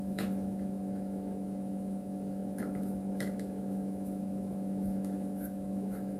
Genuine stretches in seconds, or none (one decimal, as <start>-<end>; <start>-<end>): none